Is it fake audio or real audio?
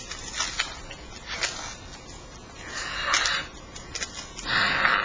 real